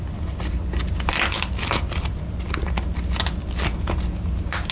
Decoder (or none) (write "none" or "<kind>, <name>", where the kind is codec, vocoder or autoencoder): none